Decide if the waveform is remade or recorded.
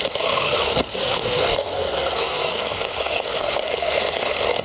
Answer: remade